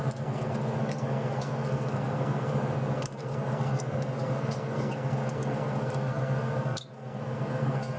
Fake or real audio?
fake